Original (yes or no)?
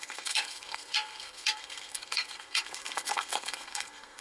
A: no